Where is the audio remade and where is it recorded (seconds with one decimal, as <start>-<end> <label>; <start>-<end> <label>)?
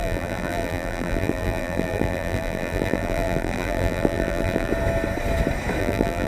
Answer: 0.0-4.7 remade; 4.7-5.8 recorded; 5.8-6.3 remade